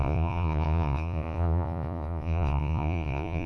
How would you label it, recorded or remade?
remade